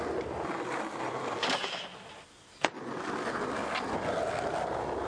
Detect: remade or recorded recorded